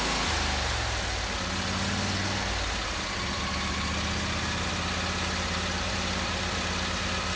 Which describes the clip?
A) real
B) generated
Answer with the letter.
A